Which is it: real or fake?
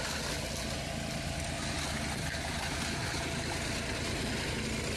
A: real